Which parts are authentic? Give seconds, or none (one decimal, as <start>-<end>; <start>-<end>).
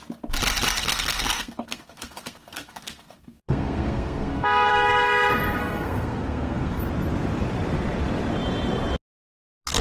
0.0-0.8; 4.7-5.6; 6.8-9.8